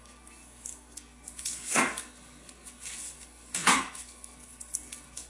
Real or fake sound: fake